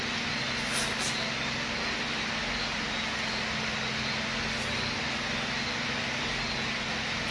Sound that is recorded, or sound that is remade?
recorded